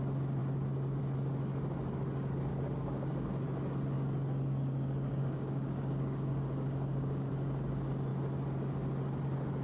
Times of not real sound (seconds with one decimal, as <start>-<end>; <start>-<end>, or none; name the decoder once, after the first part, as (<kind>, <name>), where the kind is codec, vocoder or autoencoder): 2.5-3.3 (codec, DAC); 5.1-7.3